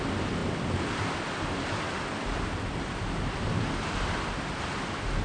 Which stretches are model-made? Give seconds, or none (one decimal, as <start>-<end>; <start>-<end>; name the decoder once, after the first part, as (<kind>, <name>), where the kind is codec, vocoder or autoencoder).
none